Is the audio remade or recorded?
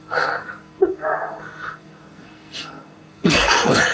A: remade